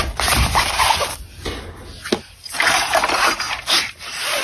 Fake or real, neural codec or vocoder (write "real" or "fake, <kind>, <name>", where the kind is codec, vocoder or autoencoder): real